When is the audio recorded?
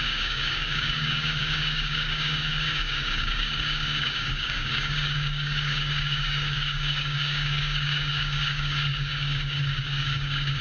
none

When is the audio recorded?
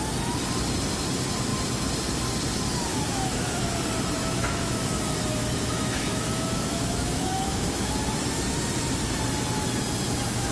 0.0-2.9; 3.5-4.2; 7.9-10.5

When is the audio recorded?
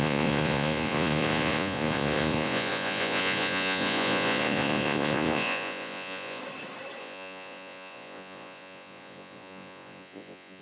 6.4-7.0